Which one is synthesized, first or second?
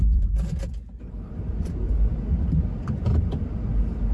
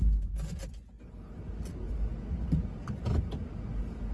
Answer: first